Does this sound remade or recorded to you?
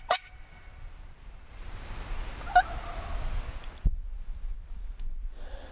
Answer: recorded